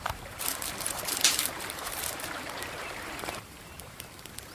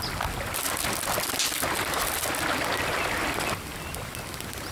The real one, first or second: second